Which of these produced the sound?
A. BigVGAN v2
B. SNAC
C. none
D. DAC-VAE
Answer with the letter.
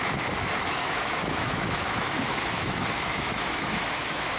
D